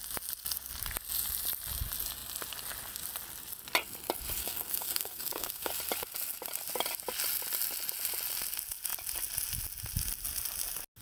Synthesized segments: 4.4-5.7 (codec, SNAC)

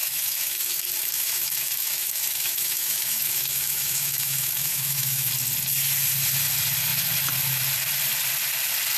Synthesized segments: 0.0-5.3 (autoencoder, DAC-VAE)

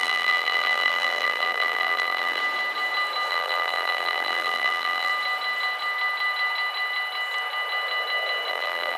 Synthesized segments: 0.0-2.4 (vocoder, BigVGAN v2); 3.3-5.1; 8.5-9.0

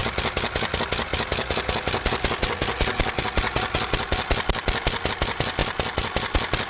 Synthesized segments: none

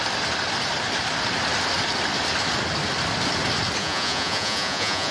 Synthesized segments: 3.8-5.1 (vocoder, Vocos)

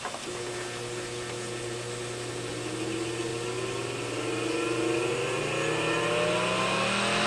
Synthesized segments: none

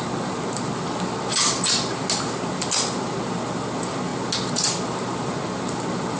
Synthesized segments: none